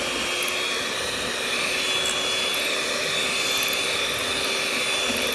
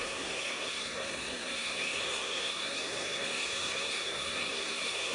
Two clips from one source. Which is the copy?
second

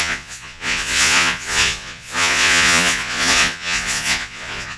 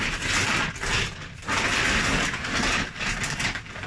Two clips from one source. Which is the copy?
first